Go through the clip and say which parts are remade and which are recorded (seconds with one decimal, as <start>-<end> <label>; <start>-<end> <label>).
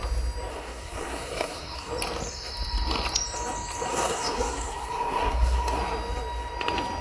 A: 0.0-0.5 recorded; 0.5-1.9 remade; 1.9-3.9 recorded; 3.9-5.8 remade; 5.8-7.0 recorded